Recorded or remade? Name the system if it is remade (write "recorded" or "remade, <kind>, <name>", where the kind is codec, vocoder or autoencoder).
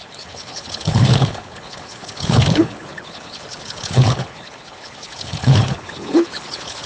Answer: remade, codec, HILCodec